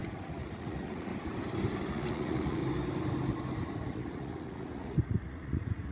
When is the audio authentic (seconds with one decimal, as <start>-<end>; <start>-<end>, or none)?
1.1-1.9; 2.6-3.9